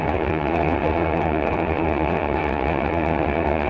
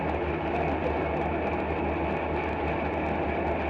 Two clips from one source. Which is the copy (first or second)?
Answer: first